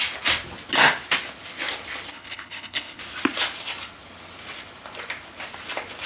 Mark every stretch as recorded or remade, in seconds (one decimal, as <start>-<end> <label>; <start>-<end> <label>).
0.0-2.1 recorded; 2.1-3.0 remade; 3.0-6.1 recorded